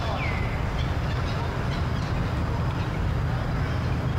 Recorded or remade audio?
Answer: recorded